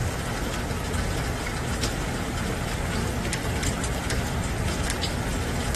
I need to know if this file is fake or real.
real